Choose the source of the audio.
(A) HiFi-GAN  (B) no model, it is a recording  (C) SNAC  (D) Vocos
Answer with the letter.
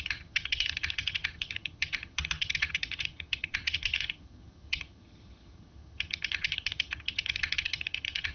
A